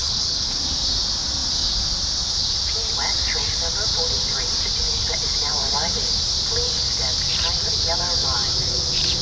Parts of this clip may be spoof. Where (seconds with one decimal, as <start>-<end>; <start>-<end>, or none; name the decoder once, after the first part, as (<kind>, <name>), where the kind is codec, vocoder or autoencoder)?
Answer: 0.0-0.6 (codec, HILCodec)